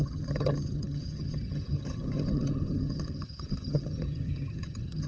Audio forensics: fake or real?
fake